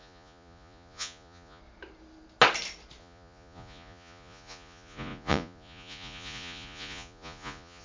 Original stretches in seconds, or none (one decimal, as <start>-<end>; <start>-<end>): 1.6-3.0